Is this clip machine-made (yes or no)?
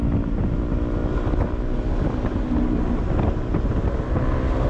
no